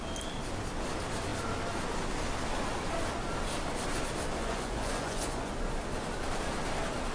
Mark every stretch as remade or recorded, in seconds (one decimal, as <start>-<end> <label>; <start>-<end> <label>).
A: 0.0-4.4 recorded; 4.4-5.5 remade; 5.5-7.1 recorded